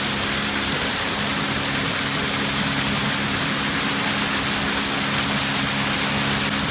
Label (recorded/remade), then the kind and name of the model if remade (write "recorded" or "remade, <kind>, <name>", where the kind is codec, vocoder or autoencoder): recorded